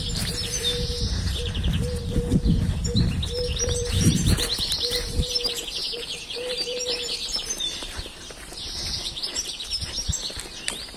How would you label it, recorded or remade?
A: remade